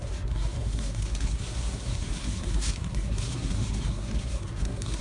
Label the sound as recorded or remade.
remade